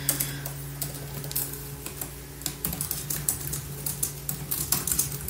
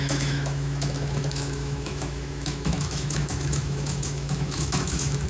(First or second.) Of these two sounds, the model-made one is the second